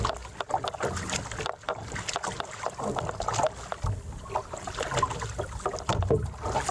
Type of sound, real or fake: real